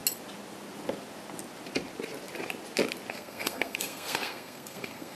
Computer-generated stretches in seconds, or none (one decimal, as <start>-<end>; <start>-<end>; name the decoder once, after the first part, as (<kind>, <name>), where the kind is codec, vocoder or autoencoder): 3.1-5.1 (codec, SNAC)